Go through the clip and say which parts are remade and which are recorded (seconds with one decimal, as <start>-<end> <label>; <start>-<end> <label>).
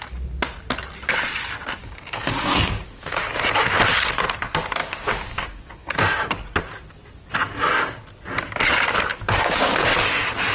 0.0-1.8 recorded; 1.8-3.2 remade; 3.2-4.8 recorded; 4.8-5.9 remade; 5.9-9.1 recorded; 9.1-9.7 remade; 9.7-10.5 recorded